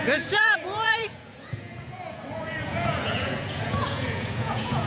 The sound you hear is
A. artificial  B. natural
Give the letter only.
A